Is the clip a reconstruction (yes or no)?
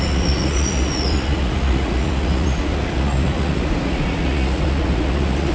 yes